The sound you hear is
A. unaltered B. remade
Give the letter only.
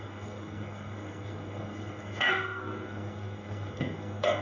B